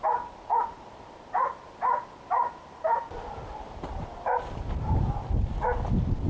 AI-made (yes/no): no